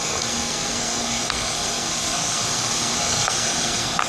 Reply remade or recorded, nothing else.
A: remade